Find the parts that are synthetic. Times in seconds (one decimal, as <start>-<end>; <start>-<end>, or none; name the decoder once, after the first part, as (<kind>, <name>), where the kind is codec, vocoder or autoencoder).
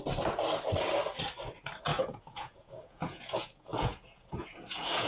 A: 1.9-5.1 (vocoder, Vocos)